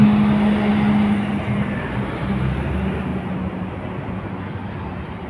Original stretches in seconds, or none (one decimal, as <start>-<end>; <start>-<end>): 0.0-5.3